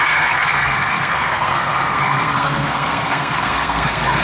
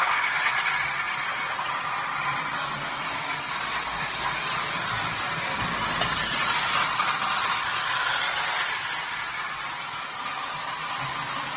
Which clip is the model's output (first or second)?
first